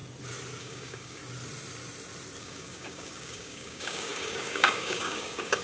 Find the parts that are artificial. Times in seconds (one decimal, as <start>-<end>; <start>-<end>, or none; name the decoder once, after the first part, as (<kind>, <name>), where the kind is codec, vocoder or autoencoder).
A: 0.6-1.2 (codec, DAC); 2.4-5.6